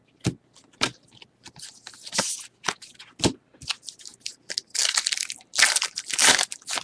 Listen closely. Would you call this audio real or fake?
real